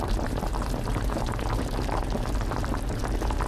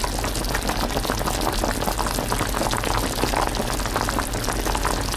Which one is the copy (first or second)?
first